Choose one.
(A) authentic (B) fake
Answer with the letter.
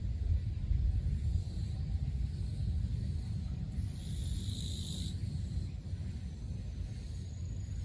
A